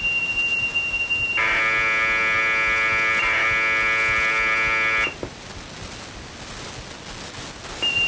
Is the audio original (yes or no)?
yes